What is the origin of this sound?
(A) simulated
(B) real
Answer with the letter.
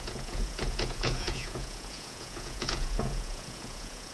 A